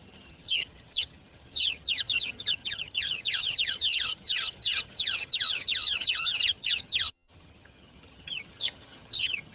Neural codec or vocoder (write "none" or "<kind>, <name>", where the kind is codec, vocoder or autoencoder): vocoder, HiFi-GAN